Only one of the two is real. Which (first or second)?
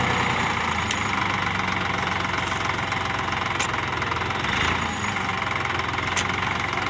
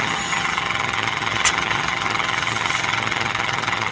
first